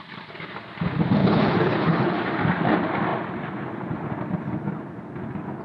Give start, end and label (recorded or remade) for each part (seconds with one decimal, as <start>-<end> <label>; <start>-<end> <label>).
0.0-1.2 recorded; 1.2-2.2 remade; 2.2-5.6 recorded